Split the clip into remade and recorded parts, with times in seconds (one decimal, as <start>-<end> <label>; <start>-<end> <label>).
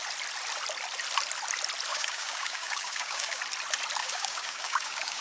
0.0-1.9 recorded; 1.9-3.4 remade; 3.4-4.0 recorded; 4.0-5.2 remade